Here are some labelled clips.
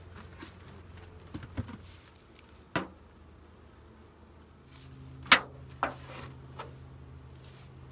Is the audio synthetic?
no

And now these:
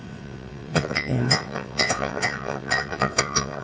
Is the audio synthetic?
yes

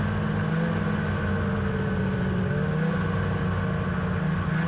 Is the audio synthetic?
no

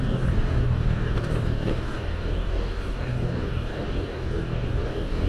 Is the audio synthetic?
yes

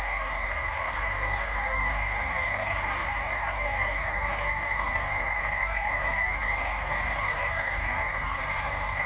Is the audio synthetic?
yes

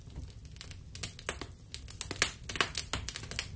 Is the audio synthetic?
no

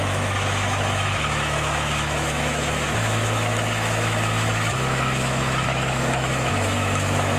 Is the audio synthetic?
yes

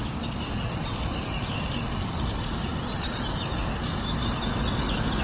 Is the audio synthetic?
no